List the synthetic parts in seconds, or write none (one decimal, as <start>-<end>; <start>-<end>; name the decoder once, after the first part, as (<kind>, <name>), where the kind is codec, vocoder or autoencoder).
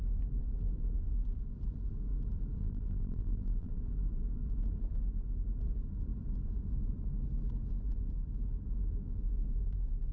2.6-3.8 (vocoder, BigVGAN v2)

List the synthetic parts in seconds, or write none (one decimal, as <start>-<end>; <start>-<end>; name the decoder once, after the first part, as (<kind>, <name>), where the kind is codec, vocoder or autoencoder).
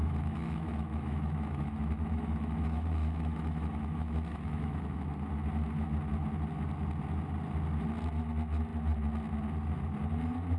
0.0-5.0 (autoencoder, DAC-VAE)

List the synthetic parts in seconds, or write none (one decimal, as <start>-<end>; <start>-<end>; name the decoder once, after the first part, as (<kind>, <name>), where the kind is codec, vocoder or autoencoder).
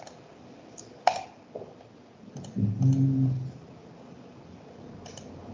none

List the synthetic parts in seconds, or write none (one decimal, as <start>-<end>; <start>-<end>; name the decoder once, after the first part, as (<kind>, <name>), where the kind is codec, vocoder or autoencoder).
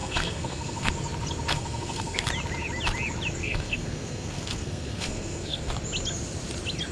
0.0-0.9 (codec, SNAC); 1.5-2.3; 3.4-5.7